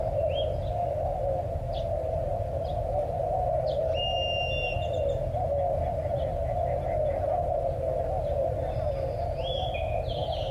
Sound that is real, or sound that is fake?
real